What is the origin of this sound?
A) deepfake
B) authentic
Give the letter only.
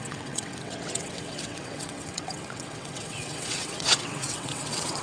A